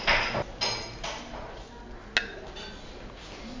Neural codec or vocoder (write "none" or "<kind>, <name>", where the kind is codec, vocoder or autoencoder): none